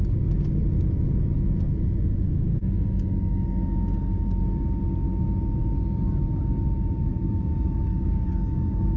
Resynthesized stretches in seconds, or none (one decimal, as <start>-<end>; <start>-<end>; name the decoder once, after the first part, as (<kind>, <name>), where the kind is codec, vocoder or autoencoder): 7.1-9.0 (codec, DAC)

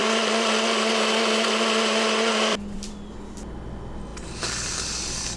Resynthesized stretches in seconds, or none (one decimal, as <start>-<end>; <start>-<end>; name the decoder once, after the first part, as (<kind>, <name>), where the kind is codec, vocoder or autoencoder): 2.5-3.1 (vocoder, BigVGAN v2); 4.1-4.8

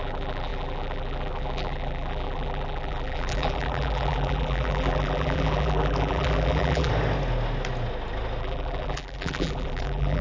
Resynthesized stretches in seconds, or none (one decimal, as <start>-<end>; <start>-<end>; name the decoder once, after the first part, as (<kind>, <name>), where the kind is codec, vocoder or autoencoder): 0.0-6.9 (vocoder, BigVGAN v2); 8.4-10.2